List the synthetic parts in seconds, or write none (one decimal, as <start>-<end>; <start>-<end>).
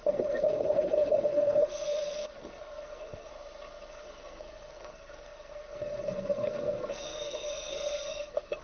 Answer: 0.0-3.3; 3.9-8.6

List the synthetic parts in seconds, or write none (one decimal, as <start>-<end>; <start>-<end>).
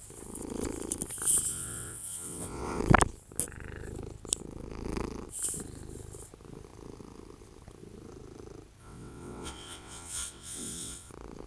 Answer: 1.5-2.8; 8.8-11.1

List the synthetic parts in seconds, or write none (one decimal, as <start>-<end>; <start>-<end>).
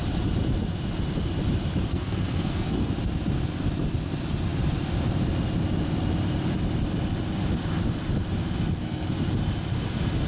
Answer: 1.9-2.9; 8.8-9.3